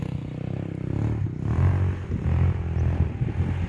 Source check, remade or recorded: recorded